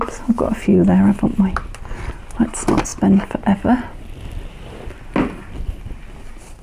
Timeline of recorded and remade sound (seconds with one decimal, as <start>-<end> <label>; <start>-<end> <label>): 0.0-6.6 recorded